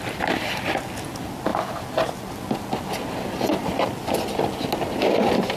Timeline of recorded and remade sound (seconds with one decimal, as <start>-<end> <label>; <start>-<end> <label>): 0.0-5.6 recorded